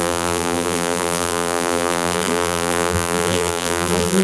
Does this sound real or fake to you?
fake